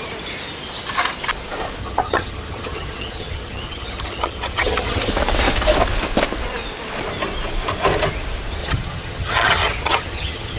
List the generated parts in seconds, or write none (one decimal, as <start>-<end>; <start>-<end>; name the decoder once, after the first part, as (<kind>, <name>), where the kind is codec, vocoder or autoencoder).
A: 1.8-5.1 (vocoder, HiFi-GAN); 8.6-10.6